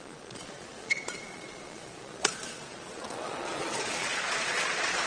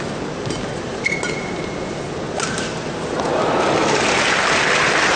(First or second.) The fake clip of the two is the first